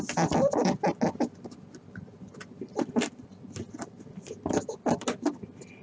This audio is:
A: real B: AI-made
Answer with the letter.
A